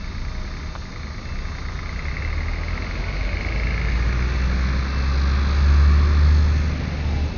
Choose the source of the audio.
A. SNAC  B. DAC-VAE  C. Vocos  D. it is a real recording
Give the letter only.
D